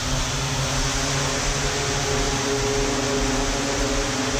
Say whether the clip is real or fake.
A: real